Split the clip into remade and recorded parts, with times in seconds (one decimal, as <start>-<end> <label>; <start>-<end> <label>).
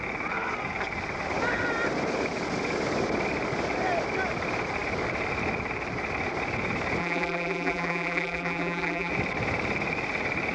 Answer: 0.0-7.0 recorded; 7.0-9.1 remade; 9.1-10.5 recorded